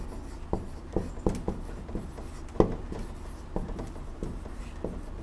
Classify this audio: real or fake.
real